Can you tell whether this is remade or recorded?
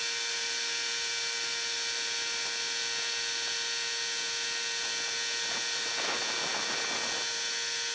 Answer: recorded